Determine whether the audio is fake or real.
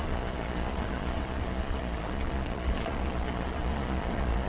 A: fake